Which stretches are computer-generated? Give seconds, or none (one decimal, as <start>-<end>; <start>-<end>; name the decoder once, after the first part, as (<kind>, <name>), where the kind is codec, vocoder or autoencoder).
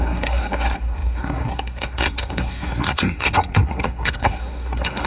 0.0-5.1 (codec, SNAC)